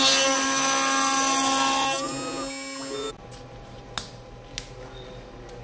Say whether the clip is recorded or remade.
recorded